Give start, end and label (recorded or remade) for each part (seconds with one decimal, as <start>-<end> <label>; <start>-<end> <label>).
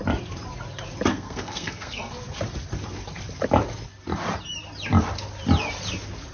0.0-1.1 recorded; 1.1-2.1 remade; 2.1-6.3 recorded